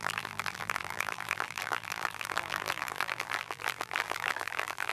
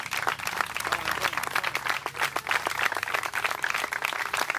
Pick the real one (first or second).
second